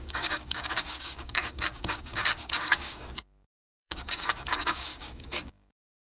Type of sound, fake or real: fake